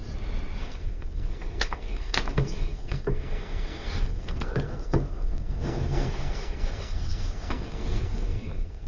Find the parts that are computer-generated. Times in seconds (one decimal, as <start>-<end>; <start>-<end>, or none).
0.6-8.9